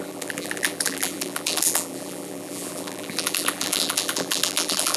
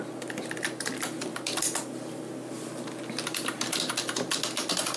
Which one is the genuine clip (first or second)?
second